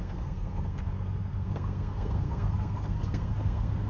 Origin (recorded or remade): remade